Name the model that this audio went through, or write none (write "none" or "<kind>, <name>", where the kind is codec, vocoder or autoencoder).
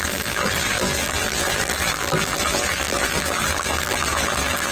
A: vocoder, BigVGAN v2